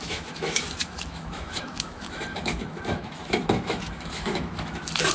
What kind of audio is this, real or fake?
fake